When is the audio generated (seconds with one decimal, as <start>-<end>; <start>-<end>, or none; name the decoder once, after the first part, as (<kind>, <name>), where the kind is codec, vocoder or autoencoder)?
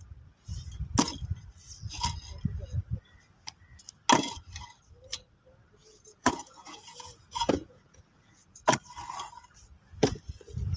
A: 5.8-8.6 (vocoder, Vocos)